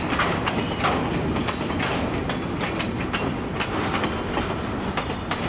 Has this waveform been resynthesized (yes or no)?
no